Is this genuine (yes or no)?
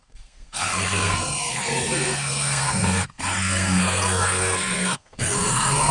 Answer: no